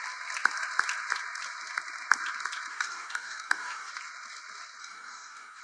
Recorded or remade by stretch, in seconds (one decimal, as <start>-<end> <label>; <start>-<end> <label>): 0.0-2.7 recorded; 2.7-3.9 remade; 3.9-4.8 recorded; 4.8-5.6 remade